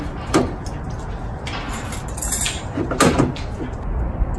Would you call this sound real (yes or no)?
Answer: yes